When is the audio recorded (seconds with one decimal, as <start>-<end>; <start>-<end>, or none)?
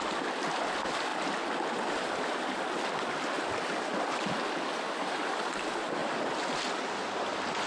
0.0-7.7